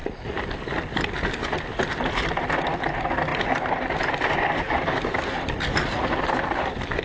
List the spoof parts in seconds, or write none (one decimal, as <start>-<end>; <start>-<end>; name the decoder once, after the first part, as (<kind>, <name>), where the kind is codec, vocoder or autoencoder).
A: none